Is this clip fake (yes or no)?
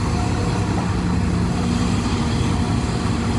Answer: no